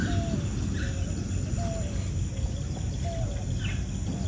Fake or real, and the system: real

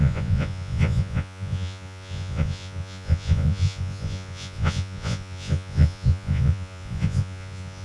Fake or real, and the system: fake, vocoder, Vocos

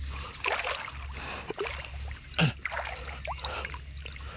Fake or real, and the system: real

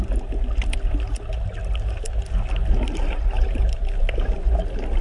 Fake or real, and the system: real